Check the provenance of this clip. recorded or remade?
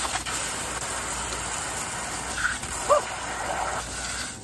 recorded